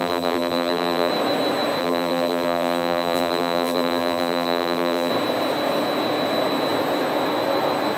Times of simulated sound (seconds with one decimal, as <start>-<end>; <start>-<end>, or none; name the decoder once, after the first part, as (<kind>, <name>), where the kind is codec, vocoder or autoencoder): 0.0-1.1 (vocoder, BigVGAN v2); 1.8-5.1